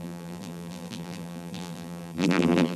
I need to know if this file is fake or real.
fake